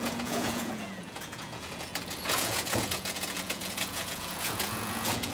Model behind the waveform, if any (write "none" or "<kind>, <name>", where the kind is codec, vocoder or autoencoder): vocoder, Vocos